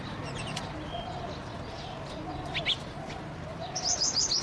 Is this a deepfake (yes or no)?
no